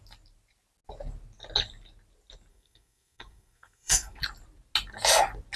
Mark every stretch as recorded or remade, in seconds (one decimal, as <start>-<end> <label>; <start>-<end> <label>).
0.0-2.5 recorded; 2.5-4.2 remade; 4.2-5.6 recorded